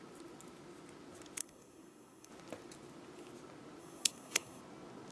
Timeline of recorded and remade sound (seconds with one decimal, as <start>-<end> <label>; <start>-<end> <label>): 0.0-1.4 recorded; 1.4-2.3 remade; 2.3-3.8 recorded; 3.8-4.6 remade; 4.6-5.1 recorded